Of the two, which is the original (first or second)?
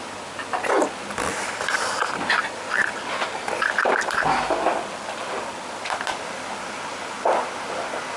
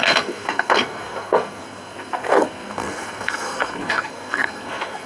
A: first